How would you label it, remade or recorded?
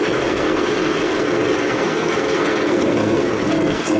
remade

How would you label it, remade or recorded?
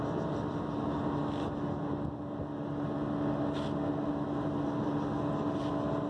recorded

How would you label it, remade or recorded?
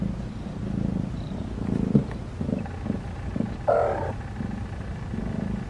recorded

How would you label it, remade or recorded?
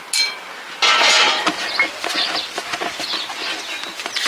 recorded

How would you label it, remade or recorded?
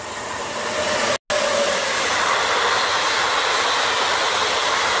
recorded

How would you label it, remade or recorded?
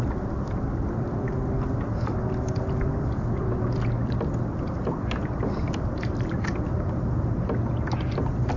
recorded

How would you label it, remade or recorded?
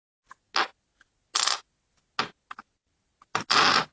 recorded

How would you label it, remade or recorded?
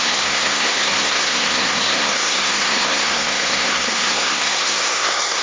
remade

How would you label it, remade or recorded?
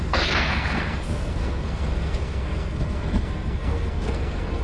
remade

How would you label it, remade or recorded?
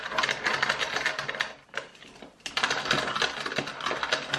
recorded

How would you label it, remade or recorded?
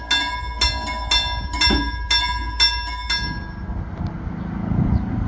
recorded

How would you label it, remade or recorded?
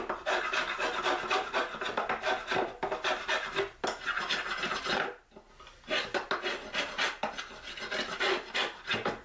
recorded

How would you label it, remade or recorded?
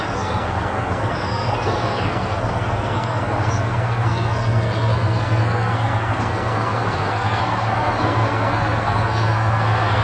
remade